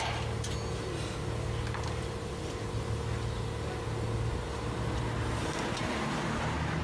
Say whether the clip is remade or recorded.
recorded